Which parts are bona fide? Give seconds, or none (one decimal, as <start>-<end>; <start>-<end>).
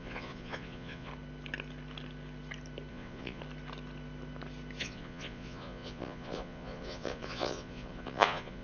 1.1-2.9; 3.4-4.8